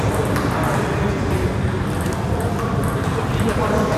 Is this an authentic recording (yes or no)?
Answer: yes